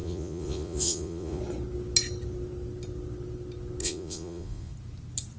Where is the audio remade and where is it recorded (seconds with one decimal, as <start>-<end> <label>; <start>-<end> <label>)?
0.0-1.4 remade; 1.4-3.8 recorded; 3.8-4.7 remade; 4.7-5.4 recorded